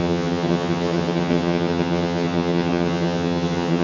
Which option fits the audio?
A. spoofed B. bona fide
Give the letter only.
A